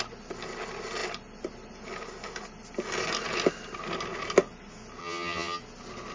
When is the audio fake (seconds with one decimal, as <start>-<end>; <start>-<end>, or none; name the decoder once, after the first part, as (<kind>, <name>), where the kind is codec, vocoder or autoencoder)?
5.0-5.6 (vocoder, HiFi-GAN)